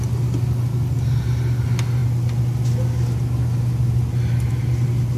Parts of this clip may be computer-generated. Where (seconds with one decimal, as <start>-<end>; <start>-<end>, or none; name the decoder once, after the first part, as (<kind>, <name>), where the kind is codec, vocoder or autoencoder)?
none